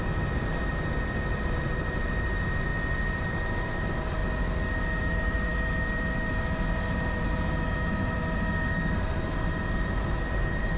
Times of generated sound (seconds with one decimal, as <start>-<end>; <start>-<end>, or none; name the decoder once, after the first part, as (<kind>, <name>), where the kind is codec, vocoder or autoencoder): 0.0-0.7 (vocoder, BigVGAN v2); 1.3-2.7; 3.2-4.2; 5.0-10.8